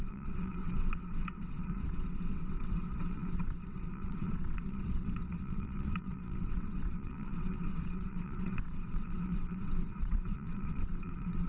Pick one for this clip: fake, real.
fake